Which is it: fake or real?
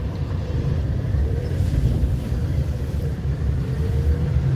fake